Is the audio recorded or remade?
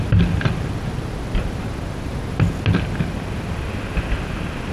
recorded